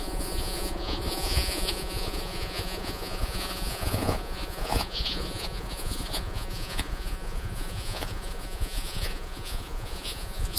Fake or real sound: fake